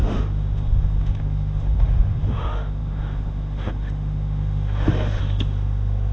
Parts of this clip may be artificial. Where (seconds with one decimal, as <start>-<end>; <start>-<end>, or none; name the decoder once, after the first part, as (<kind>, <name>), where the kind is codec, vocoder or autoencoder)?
0.0-6.1 (autoencoder, DAC-VAE)